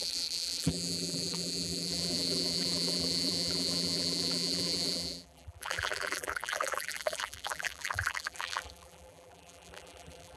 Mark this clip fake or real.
fake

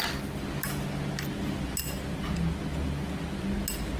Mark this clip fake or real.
real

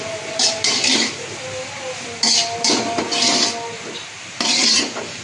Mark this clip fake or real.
real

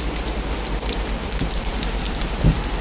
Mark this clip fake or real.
fake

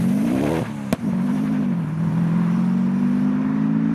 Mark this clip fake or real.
real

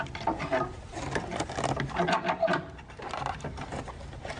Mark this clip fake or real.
real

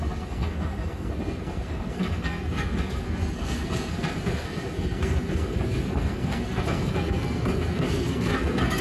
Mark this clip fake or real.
fake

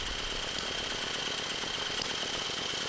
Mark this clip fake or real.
real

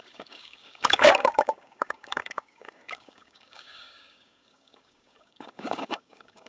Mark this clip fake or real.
fake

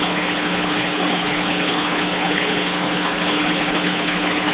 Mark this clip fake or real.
fake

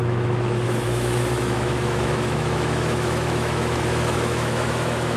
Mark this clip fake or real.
fake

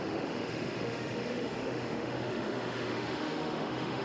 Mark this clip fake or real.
fake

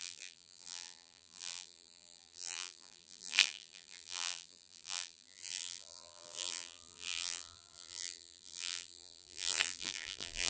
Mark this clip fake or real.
fake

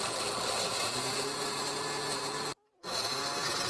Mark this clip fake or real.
real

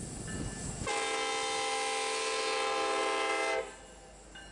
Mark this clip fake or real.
real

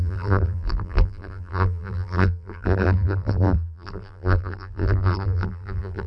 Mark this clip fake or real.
fake